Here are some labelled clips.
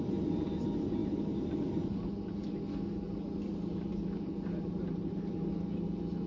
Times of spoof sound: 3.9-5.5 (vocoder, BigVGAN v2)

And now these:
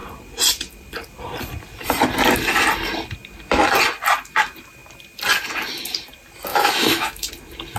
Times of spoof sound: 6.5-7.3 (autoencoder, DAC-VAE)

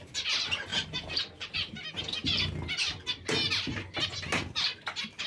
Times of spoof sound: 0.7-1.9 (vocoder, BigVGAN v2)

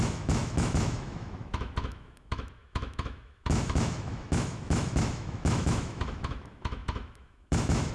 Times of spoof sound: 0.0-7.9 (autoencoder, DAC-VAE)

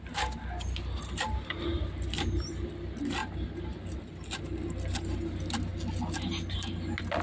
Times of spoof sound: none

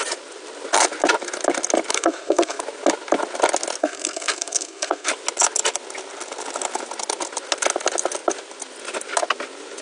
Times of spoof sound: 1.9-2.6 (codec, SNAC); 3.8-5.1

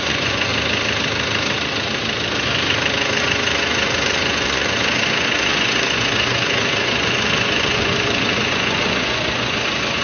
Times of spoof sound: 0.0-0.5 (vocoder, Vocos); 3.2-10.0

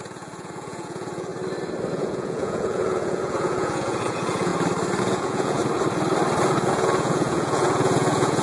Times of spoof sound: 0.0-1.3 (vocoder, Vocos); 1.9-4.5; 5.0-5.6; 6.5-8.4